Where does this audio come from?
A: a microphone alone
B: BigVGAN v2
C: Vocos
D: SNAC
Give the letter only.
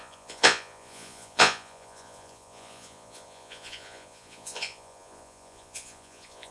C